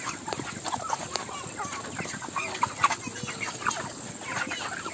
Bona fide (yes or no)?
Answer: yes